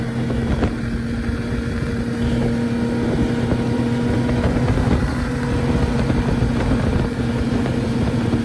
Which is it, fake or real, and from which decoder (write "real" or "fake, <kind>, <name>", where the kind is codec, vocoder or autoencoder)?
real